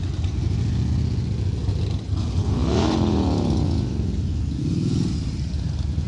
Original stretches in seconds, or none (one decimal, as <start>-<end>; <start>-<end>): 0.0-6.1